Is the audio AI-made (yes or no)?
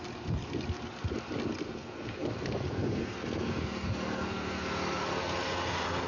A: no